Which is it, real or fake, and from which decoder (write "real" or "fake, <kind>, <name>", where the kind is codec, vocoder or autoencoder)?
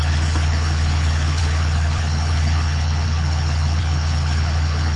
fake, codec, HILCodec